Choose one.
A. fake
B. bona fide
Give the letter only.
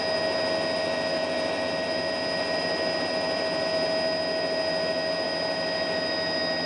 B